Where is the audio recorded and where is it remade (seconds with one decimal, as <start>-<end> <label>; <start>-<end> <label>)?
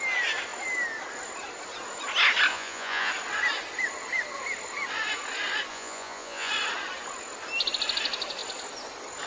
0.0-2.5 recorded; 2.5-3.1 remade; 3.1-5.7 recorded; 5.7-6.5 remade; 6.5-9.3 recorded